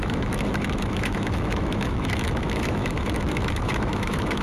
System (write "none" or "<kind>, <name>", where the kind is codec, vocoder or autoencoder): autoencoder, DAC-VAE